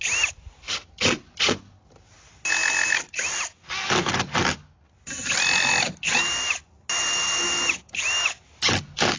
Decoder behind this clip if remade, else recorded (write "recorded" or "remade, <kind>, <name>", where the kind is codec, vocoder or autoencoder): recorded